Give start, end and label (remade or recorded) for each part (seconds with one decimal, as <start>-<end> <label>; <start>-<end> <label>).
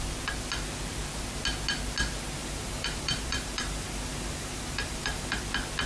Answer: 0.0-2.4 recorded; 2.4-5.4 remade; 5.4-5.9 recorded